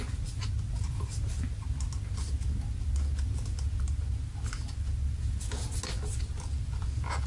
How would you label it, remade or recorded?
recorded